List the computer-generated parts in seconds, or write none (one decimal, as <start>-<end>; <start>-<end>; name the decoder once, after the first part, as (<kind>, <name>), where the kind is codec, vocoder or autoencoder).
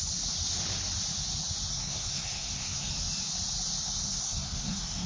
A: 1.7-2.9 (codec, SNAC); 3.9-5.1